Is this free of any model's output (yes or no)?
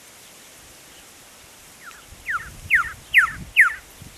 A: no